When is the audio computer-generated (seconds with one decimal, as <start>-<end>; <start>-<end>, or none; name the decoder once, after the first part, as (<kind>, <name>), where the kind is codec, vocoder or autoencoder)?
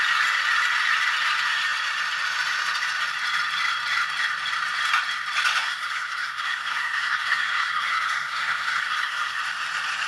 5.6-9.4 (codec, SNAC)